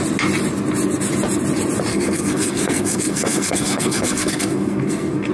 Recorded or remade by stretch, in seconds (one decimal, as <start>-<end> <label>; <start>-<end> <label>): 0.0-1.9 recorded; 1.9-5.3 remade